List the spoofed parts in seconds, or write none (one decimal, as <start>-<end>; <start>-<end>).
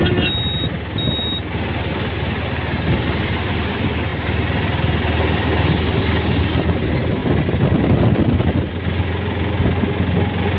none